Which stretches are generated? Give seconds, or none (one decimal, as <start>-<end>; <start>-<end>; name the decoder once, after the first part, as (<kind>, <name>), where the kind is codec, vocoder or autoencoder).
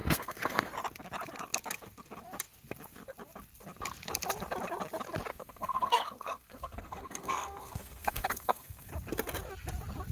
0.0-0.7 (codec, SNAC); 5.3-8.9